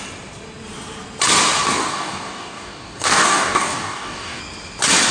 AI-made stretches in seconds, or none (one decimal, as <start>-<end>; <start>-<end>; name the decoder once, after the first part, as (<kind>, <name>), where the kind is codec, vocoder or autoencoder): 1.8-4.4 (codec, DAC)